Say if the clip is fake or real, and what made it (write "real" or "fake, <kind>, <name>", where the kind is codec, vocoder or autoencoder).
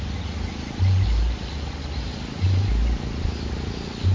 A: real